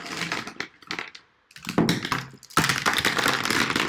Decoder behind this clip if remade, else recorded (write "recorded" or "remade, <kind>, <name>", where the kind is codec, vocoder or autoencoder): recorded